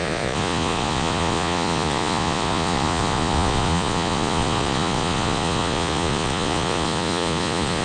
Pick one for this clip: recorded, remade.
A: remade